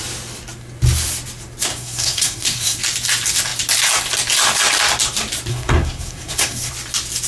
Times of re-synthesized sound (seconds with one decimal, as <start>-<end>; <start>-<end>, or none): 1.7-2.8; 5.5-6.7